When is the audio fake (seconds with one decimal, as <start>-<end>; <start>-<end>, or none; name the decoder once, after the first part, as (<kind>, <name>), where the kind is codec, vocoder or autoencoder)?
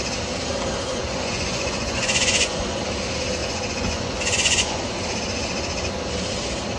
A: 0.9-2.8 (vocoder, Vocos); 3.4-4.8